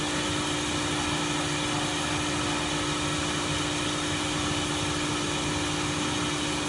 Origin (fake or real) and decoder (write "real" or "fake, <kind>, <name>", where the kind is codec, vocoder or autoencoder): real